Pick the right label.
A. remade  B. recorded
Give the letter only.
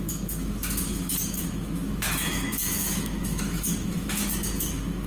A